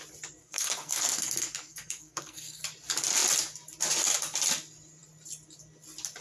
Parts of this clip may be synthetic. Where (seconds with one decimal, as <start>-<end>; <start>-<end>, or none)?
0.4-2.6